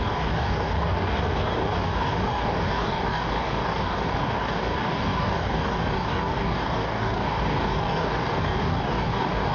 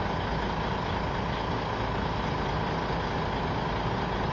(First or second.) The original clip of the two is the second